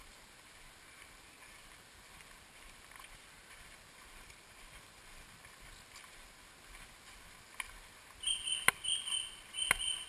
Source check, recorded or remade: recorded